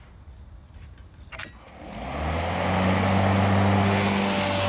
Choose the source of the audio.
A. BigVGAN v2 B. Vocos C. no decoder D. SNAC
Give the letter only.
C